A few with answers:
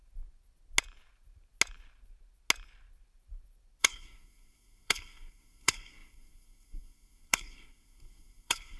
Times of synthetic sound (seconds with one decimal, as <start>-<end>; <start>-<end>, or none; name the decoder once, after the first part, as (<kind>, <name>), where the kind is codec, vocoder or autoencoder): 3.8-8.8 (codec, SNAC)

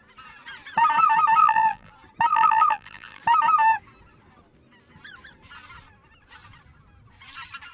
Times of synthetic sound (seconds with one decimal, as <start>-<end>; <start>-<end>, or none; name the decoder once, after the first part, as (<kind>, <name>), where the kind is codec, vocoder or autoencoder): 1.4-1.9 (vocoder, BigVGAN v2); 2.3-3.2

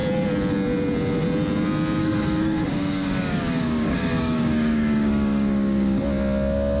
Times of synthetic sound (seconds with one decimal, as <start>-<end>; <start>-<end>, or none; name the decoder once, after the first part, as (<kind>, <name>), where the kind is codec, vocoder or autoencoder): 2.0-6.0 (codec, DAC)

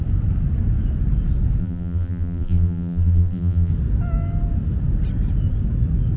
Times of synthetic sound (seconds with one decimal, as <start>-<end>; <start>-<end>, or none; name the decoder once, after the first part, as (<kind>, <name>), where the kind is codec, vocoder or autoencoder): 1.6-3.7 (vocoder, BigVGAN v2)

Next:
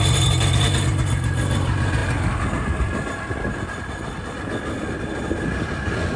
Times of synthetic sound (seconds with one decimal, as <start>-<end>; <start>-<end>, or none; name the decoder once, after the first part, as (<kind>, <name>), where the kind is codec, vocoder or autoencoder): none

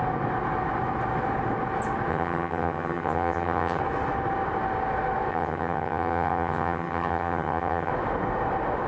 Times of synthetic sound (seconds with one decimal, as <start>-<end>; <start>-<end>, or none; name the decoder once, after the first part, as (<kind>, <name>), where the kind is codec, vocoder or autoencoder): 2.1-3.8 (vocoder, HiFi-GAN); 5.3-7.9